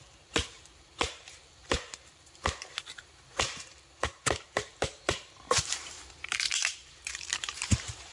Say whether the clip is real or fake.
fake